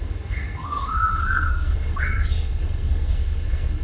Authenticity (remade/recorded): remade